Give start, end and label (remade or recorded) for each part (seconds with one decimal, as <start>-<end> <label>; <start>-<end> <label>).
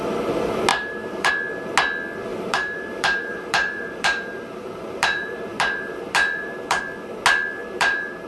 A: 0.0-0.7 recorded; 0.7-1.3 remade; 1.3-2.3 recorded; 2.3-6.8 remade; 6.8-7.6 recorded; 7.6-8.3 remade